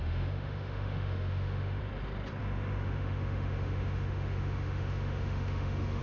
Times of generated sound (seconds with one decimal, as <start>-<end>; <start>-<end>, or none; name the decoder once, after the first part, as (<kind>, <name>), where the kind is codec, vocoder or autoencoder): 0.0-1.8 (autoencoder, DAC-VAE); 2.4-6.0